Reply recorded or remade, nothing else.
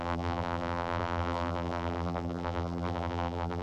remade